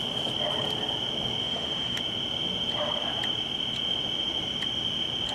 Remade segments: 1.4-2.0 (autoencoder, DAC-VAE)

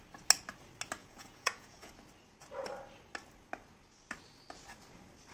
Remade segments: 1.0-1.9 (vocoder, Vocos)

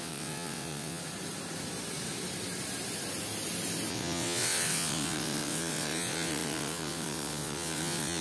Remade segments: 0.0-1.0 (vocoder, WaveNeXt); 3.9-8.2

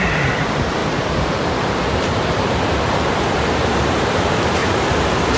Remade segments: 0.0-4.6 (vocoder, BigVGAN v2)

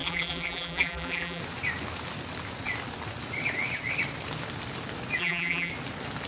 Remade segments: 0.0-1.4 (vocoder, BigVGAN v2); 5.2-5.7